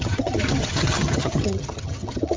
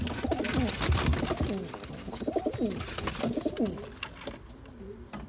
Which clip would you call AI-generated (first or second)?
first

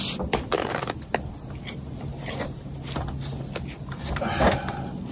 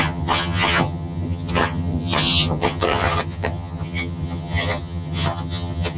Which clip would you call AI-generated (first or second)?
second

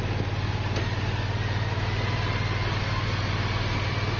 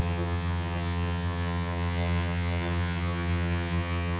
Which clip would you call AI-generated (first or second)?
second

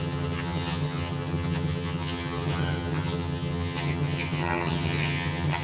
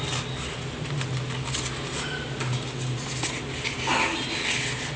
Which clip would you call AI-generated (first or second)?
first